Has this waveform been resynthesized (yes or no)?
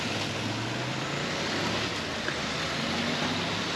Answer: no